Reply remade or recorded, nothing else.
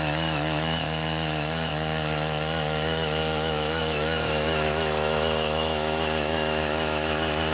remade